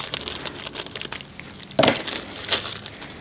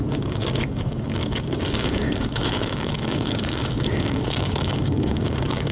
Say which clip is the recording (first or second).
first